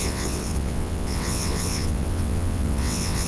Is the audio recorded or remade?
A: remade